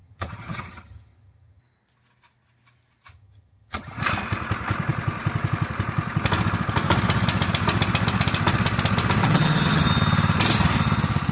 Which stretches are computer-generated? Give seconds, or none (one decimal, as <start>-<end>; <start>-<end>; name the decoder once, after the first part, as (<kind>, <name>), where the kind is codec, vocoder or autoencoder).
0.0-1.6 (vocoder, HiFi-GAN); 3.1-4.0; 9.2-9.8